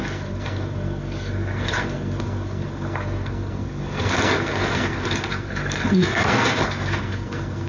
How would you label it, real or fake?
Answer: fake